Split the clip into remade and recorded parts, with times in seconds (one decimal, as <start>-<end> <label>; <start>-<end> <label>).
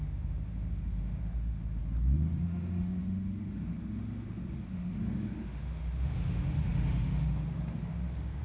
0.0-1.8 remade; 1.8-2.4 recorded; 2.4-8.4 remade